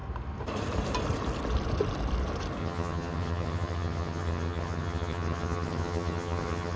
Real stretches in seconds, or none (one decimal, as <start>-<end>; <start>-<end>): 0.0-2.6